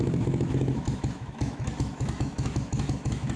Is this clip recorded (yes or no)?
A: no